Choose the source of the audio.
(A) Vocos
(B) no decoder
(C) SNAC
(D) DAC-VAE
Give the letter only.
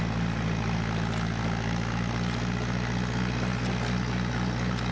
B